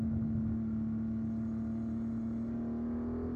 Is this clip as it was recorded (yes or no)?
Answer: yes